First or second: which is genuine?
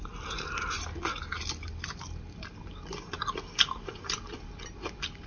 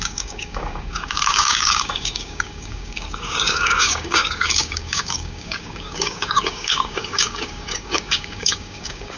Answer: first